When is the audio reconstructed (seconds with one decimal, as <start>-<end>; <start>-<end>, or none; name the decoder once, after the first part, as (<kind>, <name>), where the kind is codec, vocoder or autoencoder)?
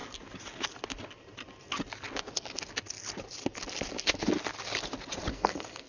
5.3-5.9 (codec, SNAC)